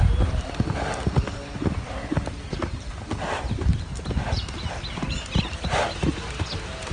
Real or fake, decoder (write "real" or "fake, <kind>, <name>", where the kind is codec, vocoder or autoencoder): real